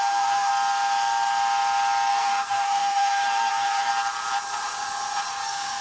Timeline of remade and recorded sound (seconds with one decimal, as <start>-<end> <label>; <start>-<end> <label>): 0.0-0.5 remade; 0.5-2.1 recorded; 2.1-3.9 remade; 3.9-5.3 recorded; 5.3-5.8 remade